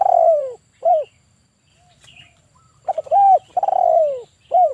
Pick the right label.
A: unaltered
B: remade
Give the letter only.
B